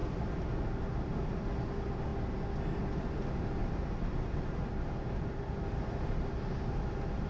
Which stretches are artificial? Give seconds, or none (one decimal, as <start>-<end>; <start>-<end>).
none